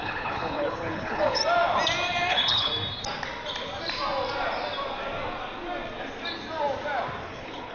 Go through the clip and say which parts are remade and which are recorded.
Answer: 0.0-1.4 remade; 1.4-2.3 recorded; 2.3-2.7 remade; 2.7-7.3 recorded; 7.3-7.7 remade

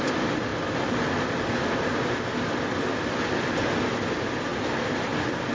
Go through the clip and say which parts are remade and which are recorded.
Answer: 0.0-5.5 recorded